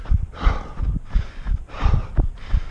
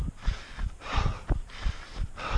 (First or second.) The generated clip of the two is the first